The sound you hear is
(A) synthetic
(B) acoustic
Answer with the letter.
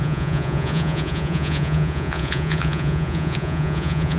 A